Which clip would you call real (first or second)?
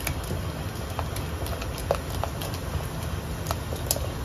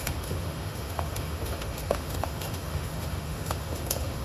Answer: first